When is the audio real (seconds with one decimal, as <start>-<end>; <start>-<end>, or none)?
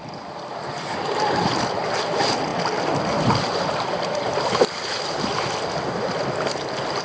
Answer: 0.0-0.5; 1.5-2.5; 5.2-7.0